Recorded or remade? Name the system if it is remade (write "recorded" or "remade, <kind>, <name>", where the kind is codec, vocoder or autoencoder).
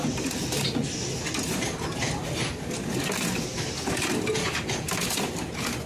recorded